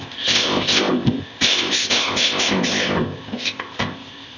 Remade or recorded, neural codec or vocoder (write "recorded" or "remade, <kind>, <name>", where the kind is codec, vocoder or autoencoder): remade, codec, ZipCodec